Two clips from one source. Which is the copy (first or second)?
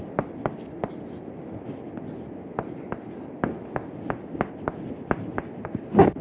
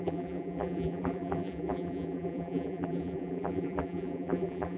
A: second